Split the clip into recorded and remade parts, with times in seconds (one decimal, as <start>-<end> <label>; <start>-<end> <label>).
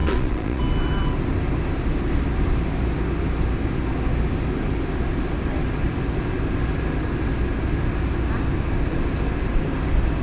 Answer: 0.0-0.6 remade; 0.6-10.2 recorded